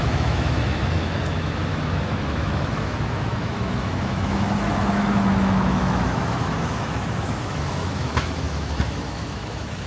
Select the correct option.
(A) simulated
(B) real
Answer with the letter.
A